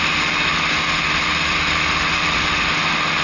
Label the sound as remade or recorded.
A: recorded